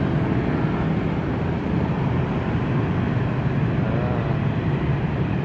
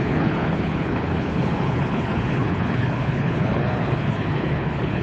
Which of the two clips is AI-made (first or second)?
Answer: second